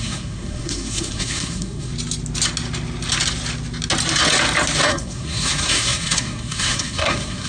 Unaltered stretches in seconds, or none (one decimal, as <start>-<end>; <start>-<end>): 1.9-4.9